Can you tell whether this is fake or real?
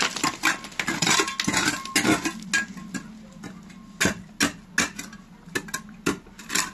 real